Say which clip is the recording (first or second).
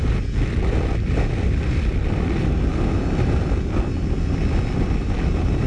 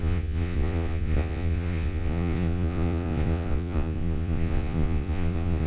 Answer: first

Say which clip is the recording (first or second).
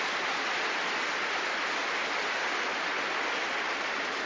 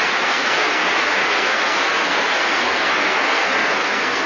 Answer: first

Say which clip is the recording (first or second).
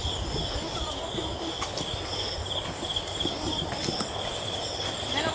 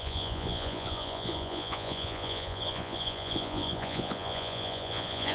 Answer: first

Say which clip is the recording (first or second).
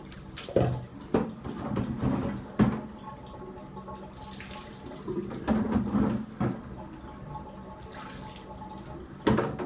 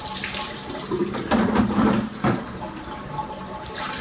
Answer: first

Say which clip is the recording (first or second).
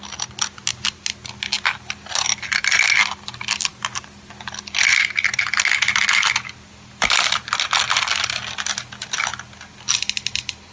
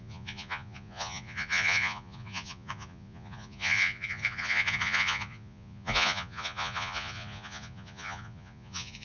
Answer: first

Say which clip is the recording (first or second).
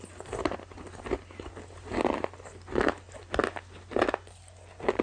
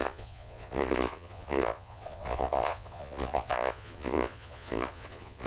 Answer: first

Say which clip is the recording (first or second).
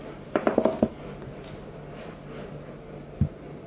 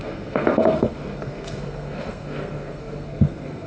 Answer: first